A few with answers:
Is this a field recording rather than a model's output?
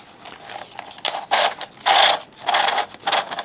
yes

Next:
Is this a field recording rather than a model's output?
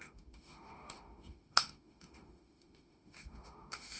no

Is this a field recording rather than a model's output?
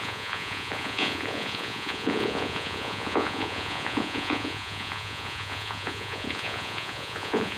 no